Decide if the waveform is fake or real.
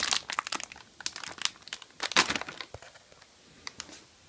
real